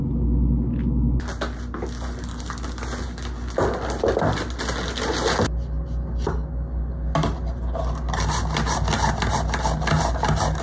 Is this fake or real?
real